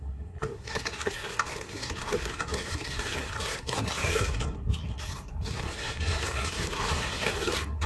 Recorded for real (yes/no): no